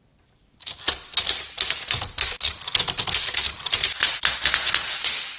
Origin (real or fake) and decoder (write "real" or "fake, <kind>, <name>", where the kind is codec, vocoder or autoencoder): real